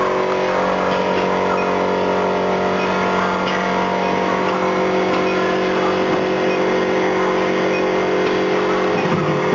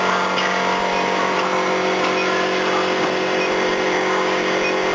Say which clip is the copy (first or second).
second